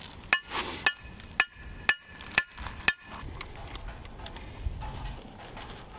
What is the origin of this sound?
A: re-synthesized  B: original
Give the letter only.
B